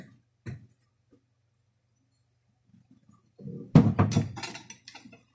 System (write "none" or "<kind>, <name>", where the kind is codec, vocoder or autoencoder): none